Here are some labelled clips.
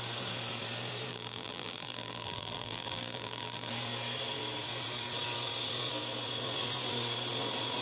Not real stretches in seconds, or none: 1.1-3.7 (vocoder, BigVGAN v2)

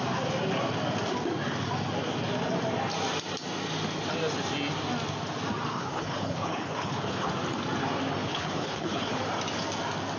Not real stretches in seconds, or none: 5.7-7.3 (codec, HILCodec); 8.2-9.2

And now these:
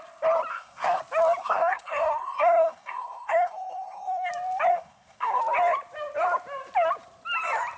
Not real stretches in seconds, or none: 0.5-1.0 (codec, SNAC); 1.4-4.3; 4.7-5.4

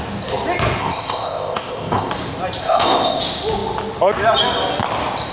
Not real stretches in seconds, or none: 0.8-2.1 (codec, ZipCodec); 2.6-3.2